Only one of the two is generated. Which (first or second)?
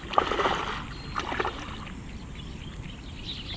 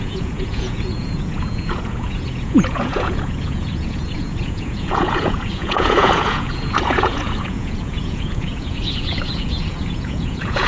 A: second